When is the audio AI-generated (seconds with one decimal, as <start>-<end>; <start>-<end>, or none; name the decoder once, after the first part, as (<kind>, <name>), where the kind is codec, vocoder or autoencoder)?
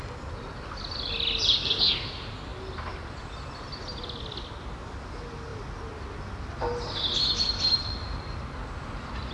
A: none